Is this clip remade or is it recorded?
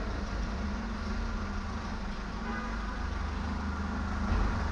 recorded